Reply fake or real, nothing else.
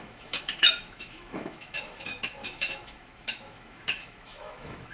fake